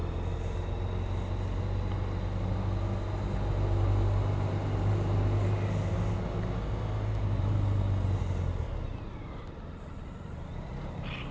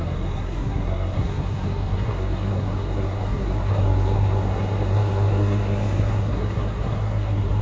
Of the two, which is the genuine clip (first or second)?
first